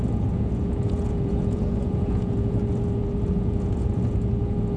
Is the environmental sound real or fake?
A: fake